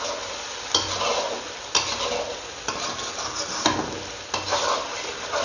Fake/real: real